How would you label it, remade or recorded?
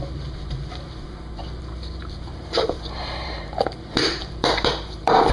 remade